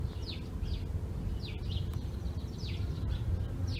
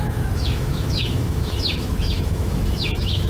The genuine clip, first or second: first